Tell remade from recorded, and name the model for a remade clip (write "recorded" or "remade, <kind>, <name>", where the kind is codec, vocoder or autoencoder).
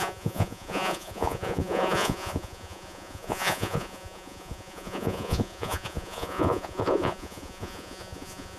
remade, vocoder, Vocos